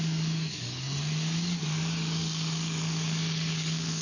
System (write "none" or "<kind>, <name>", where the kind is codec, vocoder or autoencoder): codec, DAC